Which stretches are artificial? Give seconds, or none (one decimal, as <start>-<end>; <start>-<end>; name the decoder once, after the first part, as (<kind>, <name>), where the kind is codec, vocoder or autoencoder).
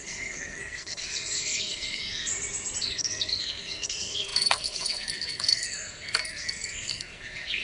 0.0-2.3 (codec, SNAC); 2.8-7.6